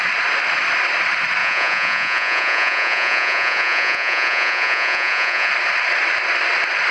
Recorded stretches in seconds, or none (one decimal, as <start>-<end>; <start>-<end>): 0.0-1.4; 5.5-6.9